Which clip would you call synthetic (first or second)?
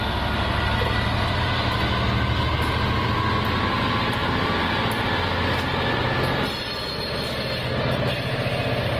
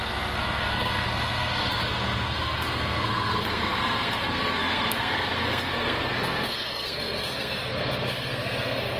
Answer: second